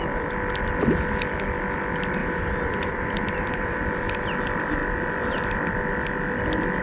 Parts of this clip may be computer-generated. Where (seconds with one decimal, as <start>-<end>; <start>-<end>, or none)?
2.2-3.8

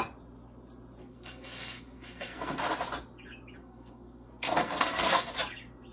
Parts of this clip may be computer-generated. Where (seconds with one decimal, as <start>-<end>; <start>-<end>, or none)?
1.0-2.6; 3.6-5.3

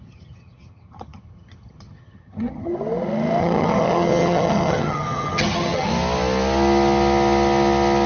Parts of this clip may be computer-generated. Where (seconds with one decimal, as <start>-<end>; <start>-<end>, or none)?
0.0-2.7; 3.4-5.9

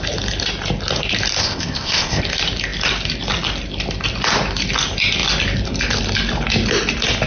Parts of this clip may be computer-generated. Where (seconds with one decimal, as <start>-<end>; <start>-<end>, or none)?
1.4-2.2